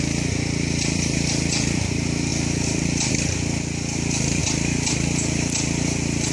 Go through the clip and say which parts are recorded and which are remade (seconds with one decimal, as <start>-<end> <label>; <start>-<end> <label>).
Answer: 0.0-6.3 remade